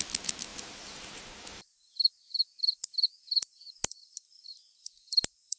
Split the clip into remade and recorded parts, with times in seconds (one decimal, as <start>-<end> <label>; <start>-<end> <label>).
0.0-3.8 recorded; 3.8-4.3 remade; 4.3-5.6 recorded